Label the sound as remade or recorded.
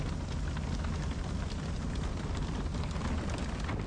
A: recorded